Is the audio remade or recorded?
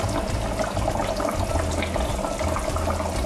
recorded